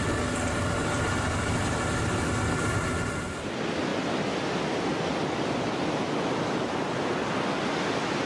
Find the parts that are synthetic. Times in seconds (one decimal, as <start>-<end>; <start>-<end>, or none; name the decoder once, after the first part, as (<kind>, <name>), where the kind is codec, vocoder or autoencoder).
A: none